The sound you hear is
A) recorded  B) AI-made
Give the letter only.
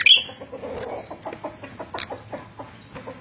A